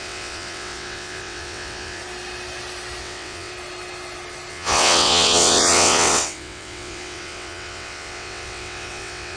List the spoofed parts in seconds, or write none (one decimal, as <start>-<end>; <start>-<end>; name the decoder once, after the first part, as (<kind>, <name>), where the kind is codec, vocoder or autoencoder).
0.0-2.0 (vocoder, WaveNeXt); 3.0-3.5; 4.5-9.4

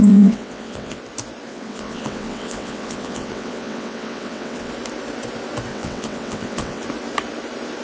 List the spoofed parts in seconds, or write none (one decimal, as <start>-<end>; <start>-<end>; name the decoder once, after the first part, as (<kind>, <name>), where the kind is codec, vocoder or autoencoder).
0.0-1.0 (vocoder, WaveNeXt); 1.5-4.7; 5.7-6.8

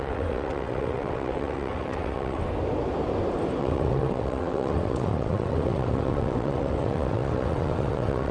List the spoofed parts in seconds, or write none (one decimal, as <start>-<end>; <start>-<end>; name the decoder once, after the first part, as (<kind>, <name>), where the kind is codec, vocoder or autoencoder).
0.0-2.4 (vocoder, WaveNeXt); 3.6-8.3

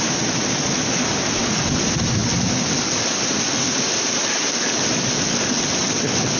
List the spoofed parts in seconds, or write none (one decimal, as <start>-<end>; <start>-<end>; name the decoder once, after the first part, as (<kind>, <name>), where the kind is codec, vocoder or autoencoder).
none

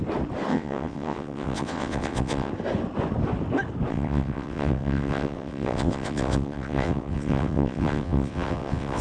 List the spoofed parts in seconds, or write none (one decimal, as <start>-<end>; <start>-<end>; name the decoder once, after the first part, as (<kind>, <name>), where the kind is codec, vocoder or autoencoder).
0.5-2.5 (vocoder, WaveNeXt); 3.9-9.0